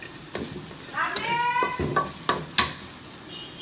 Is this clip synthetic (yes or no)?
no